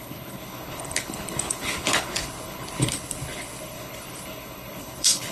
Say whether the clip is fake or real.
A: fake